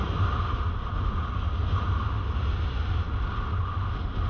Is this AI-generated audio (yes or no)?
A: no